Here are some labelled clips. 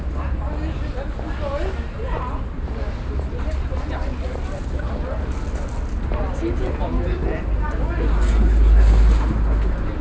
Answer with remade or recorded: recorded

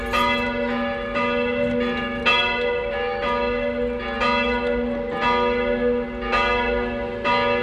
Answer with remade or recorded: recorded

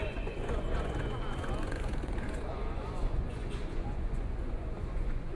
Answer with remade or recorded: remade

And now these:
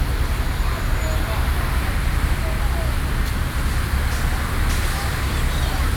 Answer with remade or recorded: recorded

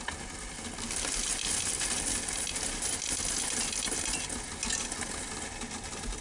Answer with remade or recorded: recorded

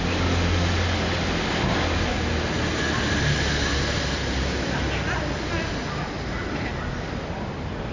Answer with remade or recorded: recorded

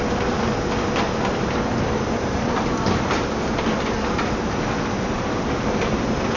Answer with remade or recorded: recorded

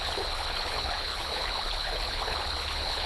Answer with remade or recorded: remade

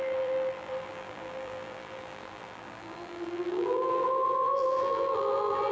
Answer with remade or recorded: remade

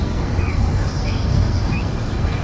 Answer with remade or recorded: remade